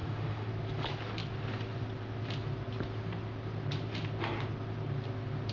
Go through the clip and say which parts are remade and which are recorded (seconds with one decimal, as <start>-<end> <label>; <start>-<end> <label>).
0.0-0.5 remade; 0.5-5.5 recorded